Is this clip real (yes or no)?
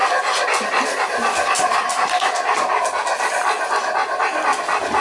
yes